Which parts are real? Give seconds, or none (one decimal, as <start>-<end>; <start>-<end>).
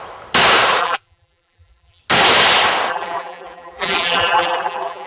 0.0-0.8; 2.0-2.9